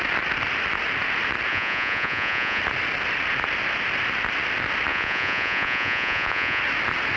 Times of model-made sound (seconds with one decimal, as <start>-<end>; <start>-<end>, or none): 1.5-2.6; 4.9-6.6